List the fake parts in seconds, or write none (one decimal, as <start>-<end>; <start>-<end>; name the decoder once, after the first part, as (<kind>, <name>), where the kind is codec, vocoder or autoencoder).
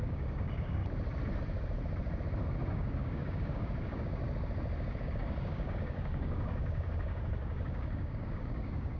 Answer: 0.0-0.8 (codec, DAC); 2.7-4.2; 5.0-9.0